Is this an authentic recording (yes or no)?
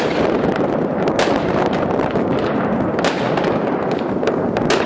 yes